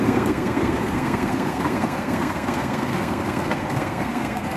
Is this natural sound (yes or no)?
no